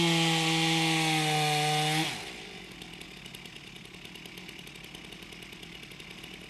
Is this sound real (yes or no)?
yes